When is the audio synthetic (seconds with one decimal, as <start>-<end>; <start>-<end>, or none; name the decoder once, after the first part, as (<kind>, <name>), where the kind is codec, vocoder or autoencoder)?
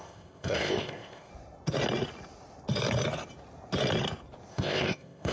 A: 0.0-1.3 (codec, ZipCodec); 4.5-5.3